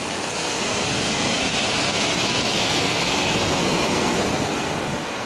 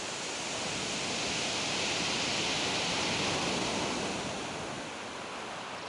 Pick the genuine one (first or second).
second